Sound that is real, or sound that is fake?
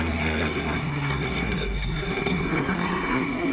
fake